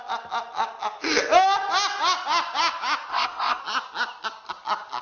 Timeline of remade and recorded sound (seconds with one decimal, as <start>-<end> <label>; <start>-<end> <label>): 0.0-3.1 recorded; 3.1-3.6 remade; 3.6-5.0 recorded